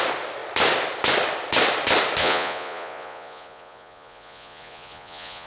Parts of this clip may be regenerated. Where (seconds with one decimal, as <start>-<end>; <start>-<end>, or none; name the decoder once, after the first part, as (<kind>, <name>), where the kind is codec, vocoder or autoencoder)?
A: 2.2-5.5 (vocoder, Vocos)